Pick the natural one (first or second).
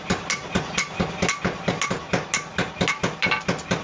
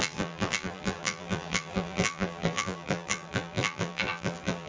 first